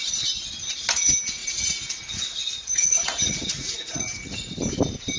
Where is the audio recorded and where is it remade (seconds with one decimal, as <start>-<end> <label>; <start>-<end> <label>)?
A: 0.0-1.4 recorded; 1.4-4.5 remade; 4.5-5.2 recorded